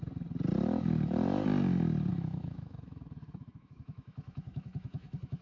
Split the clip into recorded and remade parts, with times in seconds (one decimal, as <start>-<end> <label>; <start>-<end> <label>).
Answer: 0.0-2.1 recorded; 2.1-5.4 remade